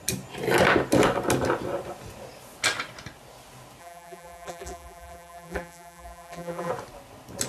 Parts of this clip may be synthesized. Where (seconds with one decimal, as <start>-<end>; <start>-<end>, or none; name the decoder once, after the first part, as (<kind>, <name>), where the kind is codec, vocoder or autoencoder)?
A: 3.8-6.7 (vocoder, BigVGAN v2)